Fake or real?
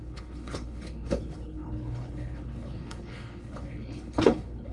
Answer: fake